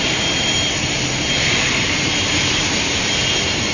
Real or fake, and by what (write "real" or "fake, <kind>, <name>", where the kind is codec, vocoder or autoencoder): fake, vocoder, BigVGAN v2